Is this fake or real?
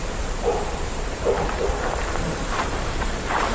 fake